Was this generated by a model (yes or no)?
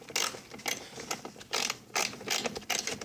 no